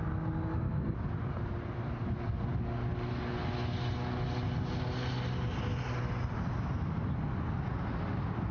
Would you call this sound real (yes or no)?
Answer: yes